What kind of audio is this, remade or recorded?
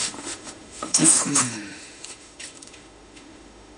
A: remade